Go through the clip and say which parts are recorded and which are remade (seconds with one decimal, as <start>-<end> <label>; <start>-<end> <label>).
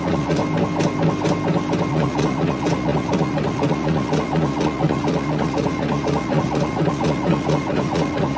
0.0-0.4 remade; 0.4-1.9 recorded; 1.9-8.4 remade